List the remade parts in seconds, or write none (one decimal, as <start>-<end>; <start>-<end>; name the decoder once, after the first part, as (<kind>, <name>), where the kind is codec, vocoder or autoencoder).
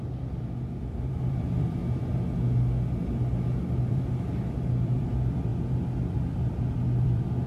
0.0-1.8 (vocoder, BigVGAN v2); 3.9-5.5; 6.2-7.5